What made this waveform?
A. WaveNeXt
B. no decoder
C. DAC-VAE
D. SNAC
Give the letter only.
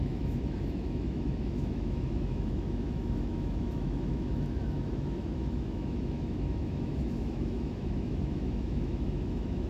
C